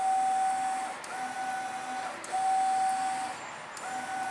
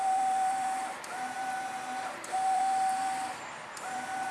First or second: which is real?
first